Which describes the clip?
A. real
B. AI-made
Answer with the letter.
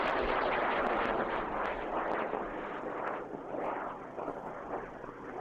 A